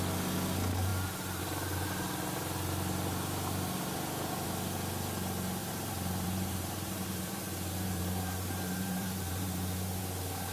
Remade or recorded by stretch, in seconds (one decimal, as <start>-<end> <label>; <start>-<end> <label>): 0.0-5.6 recorded; 5.6-10.0 remade; 10.0-10.5 recorded